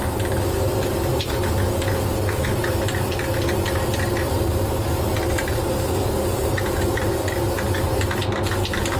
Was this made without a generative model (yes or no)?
yes